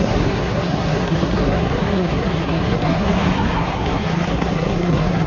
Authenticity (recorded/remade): remade